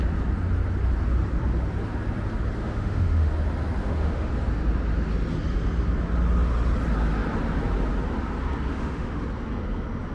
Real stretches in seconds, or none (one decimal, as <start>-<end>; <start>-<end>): 0.0-2.6; 3.3-3.8; 4.3-8.7; 9.2-10.1